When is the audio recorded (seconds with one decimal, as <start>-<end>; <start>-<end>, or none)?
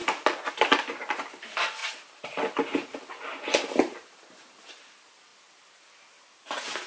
0.0-6.9